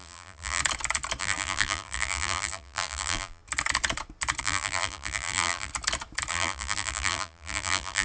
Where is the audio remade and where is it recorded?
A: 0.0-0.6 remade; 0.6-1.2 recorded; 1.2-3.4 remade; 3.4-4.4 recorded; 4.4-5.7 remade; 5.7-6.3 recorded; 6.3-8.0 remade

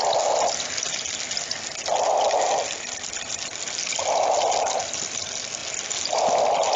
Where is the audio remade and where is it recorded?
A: 0.0-6.8 recorded